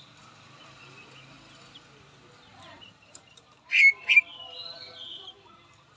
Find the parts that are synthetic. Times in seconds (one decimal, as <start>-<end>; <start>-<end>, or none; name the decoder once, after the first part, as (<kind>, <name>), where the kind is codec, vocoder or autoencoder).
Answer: 2.5-3.9 (vocoder, BigVGAN v2)